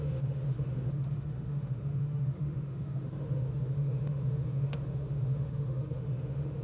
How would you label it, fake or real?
fake